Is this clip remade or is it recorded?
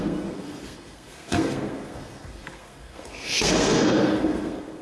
remade